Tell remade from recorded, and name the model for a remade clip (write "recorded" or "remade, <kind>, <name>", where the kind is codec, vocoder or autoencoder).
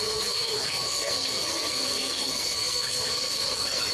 remade, codec, SNAC